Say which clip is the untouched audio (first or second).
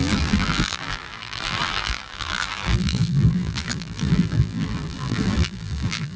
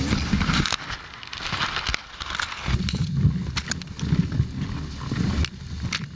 second